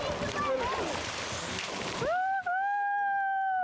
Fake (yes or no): no